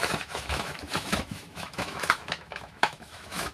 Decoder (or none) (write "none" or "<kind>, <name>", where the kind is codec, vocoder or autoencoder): autoencoder, DAC-VAE